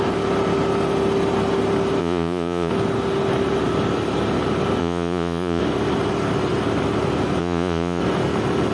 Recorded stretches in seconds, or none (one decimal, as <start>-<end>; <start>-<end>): 0.0-2.0; 2.7-4.8; 5.6-7.4; 8.0-8.7